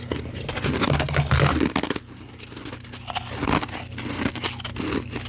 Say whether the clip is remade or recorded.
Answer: recorded